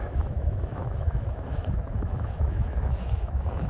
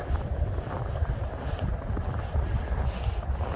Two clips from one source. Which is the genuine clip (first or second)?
second